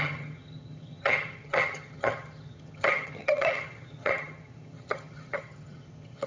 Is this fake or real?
fake